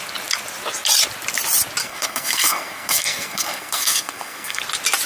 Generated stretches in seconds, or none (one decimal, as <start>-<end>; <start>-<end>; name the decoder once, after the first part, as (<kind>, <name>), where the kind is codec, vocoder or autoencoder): 1.8-4.6 (codec, SNAC)